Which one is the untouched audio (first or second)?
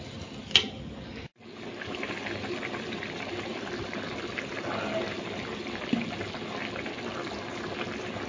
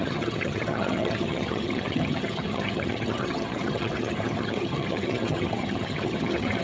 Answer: first